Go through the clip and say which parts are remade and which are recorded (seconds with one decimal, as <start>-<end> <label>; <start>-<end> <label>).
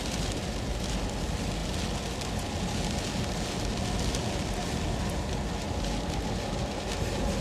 0.0-7.4 recorded